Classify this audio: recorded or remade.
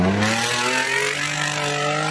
recorded